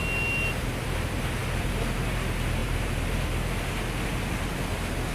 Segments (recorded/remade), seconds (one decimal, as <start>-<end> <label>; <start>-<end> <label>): 0.0-2.6 recorded; 2.6-3.2 remade; 3.2-5.1 recorded